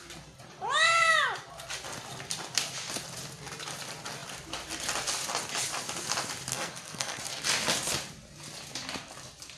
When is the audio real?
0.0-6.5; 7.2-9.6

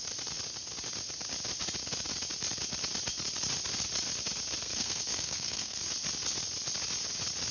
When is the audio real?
0.0-4.6; 5.8-7.5

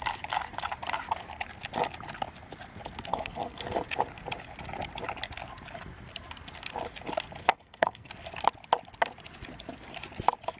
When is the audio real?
0.0-3.1; 3.6-7.4; 8.1-10.6

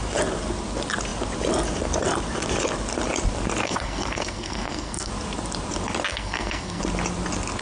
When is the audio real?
0.0-3.6; 5.1-6.1; 6.8-7.6